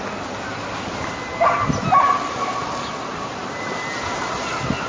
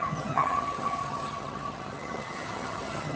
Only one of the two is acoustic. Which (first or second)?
first